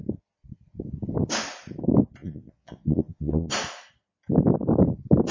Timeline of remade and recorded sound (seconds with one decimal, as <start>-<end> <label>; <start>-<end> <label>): 0.0-2.2 recorded; 2.2-3.5 remade; 3.5-5.3 recorded